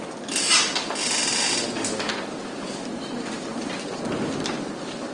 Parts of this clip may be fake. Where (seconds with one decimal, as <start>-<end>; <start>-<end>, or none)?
none